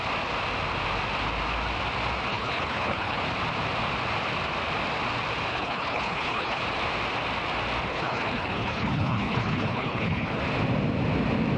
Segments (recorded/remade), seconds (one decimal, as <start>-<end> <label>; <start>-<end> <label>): 0.0-2.3 recorded; 2.3-3.2 remade; 3.2-5.5 recorded; 5.5-6.6 remade; 6.6-7.9 recorded; 7.9-10.4 remade; 10.4-11.6 recorded